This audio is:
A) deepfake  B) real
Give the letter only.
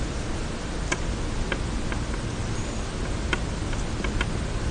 B